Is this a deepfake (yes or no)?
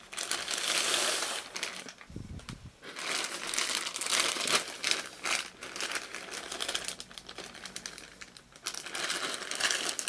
no